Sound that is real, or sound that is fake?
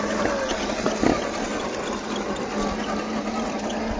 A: real